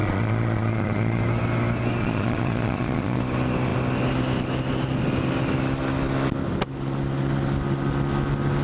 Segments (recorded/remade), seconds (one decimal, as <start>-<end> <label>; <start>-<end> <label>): 0.0-1.2 remade; 1.2-2.0 recorded; 2.0-3.2 remade; 3.2-8.6 recorded